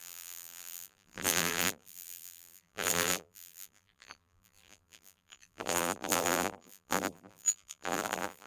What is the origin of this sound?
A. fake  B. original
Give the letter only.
A